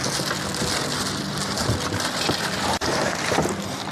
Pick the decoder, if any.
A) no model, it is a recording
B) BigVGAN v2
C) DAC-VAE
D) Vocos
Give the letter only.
A